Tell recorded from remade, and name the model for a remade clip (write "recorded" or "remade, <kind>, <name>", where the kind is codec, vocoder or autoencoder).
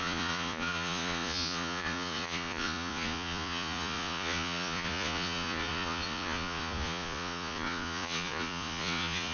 remade, vocoder, Vocos